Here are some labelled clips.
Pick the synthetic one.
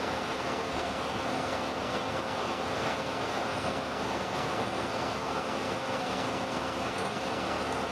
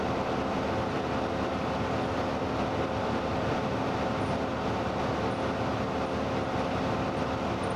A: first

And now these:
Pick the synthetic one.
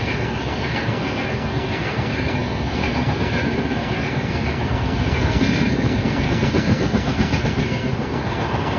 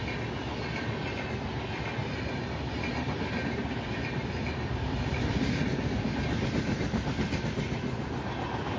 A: first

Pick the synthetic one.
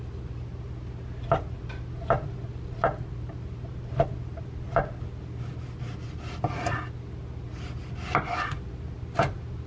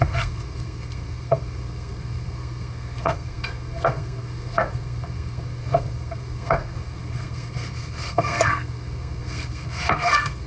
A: second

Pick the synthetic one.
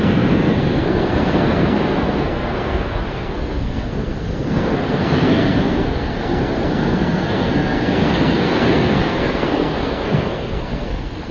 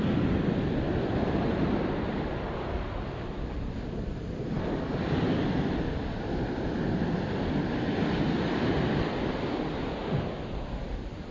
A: first